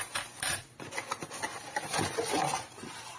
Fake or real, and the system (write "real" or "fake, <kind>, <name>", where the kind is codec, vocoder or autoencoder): real